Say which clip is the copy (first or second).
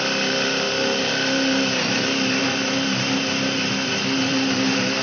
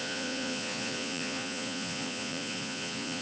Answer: second